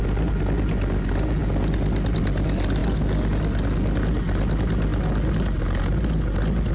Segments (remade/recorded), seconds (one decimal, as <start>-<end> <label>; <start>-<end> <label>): 0.0-6.7 recorded